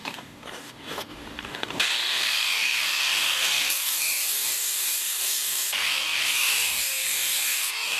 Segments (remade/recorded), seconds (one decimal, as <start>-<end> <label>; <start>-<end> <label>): 0.0-8.0 remade